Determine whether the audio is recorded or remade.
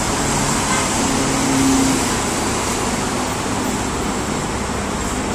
recorded